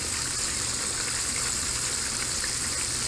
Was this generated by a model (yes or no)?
yes